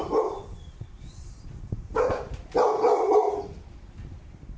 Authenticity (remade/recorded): remade